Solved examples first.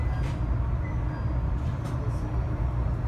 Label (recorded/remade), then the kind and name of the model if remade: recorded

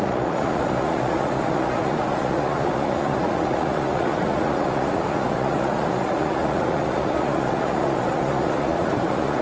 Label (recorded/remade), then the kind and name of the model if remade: remade, vocoder, Vocos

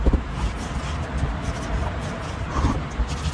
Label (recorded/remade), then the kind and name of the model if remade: recorded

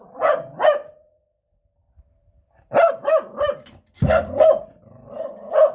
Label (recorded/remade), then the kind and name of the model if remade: remade, vocoder, BigVGAN v2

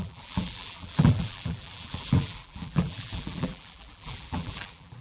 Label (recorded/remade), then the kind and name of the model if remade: remade, vocoder, BigVGAN v2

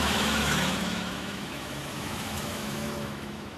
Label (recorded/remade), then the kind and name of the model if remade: remade, autoencoder, DAC-VAE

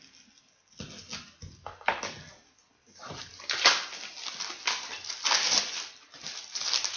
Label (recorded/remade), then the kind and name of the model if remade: recorded